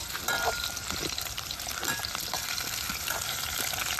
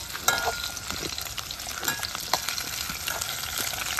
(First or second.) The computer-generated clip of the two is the first